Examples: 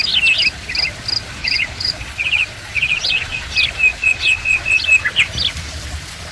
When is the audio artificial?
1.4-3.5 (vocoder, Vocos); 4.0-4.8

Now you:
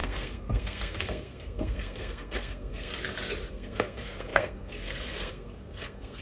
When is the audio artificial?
0.0-2.9 (codec, SNAC); 3.5-6.2

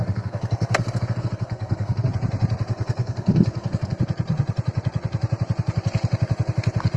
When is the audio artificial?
0.0-2.1 (codec, SNAC); 2.7-4.0

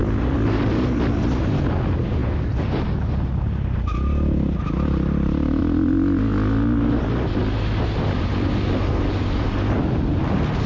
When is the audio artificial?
none

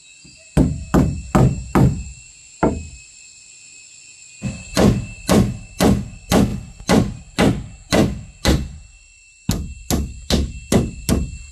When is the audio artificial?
6.5-7.2 (vocoder, BigVGAN v2)

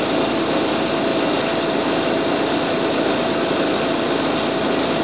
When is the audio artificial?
1.1-4.1 (vocoder, BigVGAN v2)

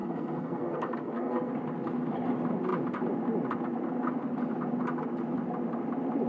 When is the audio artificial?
0.0-1.5 (codec, SNAC)